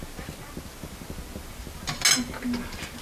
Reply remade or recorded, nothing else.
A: recorded